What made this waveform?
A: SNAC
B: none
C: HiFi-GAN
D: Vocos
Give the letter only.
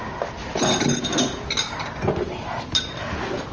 B